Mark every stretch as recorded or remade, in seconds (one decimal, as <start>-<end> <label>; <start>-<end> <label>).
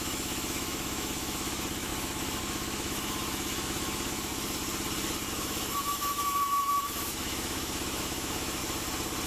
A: 0.0-4.3 remade; 4.3-5.3 recorded; 5.3-8.6 remade; 8.6-9.3 recorded